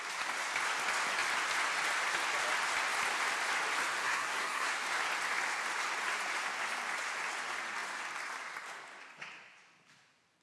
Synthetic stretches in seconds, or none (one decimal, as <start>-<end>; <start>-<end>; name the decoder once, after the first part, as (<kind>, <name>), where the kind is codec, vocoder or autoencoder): 4.0-4.8 (codec, SNAC)